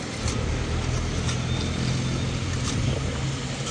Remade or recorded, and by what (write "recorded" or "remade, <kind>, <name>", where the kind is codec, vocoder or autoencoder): recorded